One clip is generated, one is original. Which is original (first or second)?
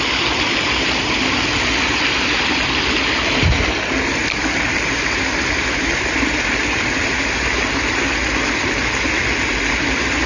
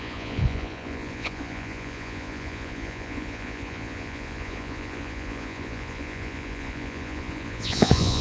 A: first